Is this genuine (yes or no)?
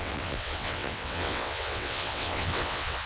no